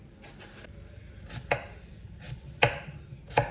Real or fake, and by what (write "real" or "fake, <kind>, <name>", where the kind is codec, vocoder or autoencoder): real